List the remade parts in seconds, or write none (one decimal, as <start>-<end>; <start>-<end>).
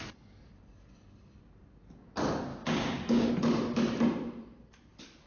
2.5-3.3